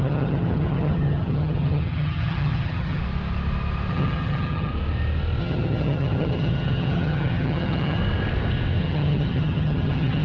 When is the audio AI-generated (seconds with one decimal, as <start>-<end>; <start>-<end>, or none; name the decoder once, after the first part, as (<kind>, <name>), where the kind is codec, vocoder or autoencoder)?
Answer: 0.0-3.0 (vocoder, HiFi-GAN); 3.9-4.7; 5.4-8.0; 8.8-10.2